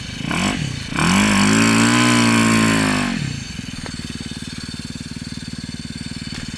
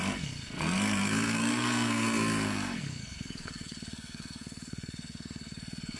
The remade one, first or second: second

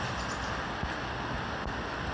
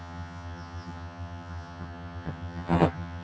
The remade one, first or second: second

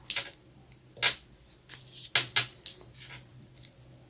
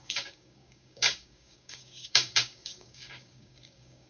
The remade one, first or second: second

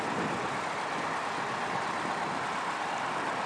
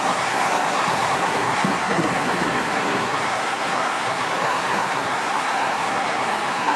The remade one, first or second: second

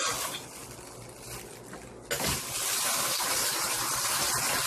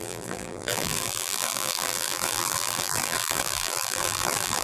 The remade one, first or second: second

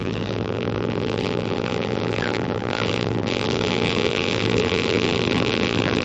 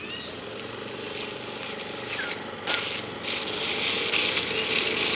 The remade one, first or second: first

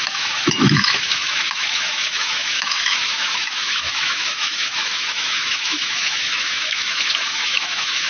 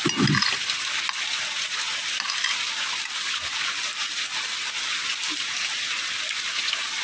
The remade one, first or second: first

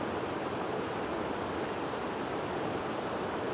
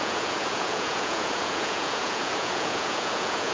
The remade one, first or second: second